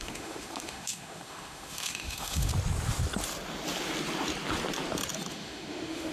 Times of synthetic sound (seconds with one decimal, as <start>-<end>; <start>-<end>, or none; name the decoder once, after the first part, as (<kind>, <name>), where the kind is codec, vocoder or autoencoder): 0.0-2.5 (autoencoder, DAC-VAE); 5.3-6.1